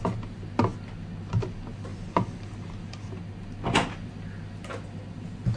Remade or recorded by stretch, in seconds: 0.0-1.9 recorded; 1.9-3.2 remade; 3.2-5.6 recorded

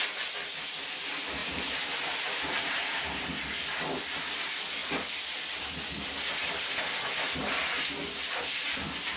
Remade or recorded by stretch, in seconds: 0.0-1.4 recorded; 1.4-3.2 remade; 3.2-9.2 recorded

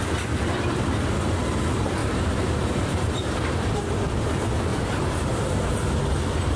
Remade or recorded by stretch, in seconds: 0.0-2.0 recorded; 2.0-3.7 remade; 3.7-4.7 recorded; 4.7-6.0 remade; 6.0-6.6 recorded